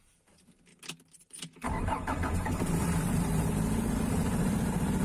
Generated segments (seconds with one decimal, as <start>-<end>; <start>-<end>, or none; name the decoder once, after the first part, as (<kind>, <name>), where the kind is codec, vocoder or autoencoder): 0.0-0.7 (vocoder, BigVGAN v2); 1.2-5.0